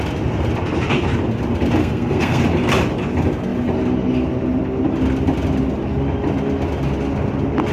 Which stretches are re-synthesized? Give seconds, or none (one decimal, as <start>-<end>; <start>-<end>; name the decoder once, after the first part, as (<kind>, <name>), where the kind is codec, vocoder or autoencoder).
1.8-2.4 (codec, SNAC)